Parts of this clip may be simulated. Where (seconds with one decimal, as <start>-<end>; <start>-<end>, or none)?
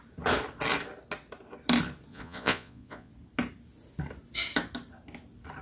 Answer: 2.1-3.1